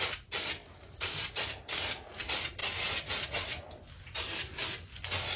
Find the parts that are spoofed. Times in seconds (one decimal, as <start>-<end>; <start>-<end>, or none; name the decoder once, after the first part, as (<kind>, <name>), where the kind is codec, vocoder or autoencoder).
0.6-1.3 (vocoder, BigVGAN v2); 2.6-3.3